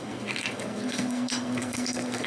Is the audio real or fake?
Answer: fake